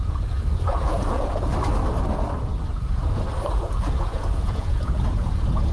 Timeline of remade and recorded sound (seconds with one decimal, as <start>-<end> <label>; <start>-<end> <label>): 0.0-1.5 remade; 1.5-2.6 recorded; 2.6-3.0 remade; 3.0-3.6 recorded; 3.6-5.7 remade

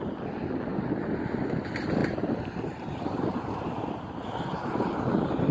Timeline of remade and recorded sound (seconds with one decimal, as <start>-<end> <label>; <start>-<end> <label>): 0.0-0.7 recorded; 0.7-1.2 remade; 1.2-2.0 recorded; 2.0-5.5 remade

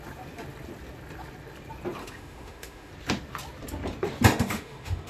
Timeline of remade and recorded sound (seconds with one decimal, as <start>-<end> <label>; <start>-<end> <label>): 0.0-2.0 recorded; 2.0-2.9 remade; 2.9-4.3 recorded; 4.3-5.1 remade